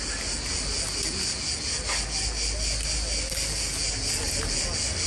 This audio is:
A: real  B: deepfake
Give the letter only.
A